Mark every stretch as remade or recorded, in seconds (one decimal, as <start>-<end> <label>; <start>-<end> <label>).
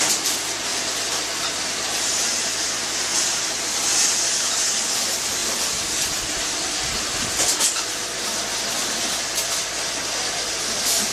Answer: 0.0-11.1 recorded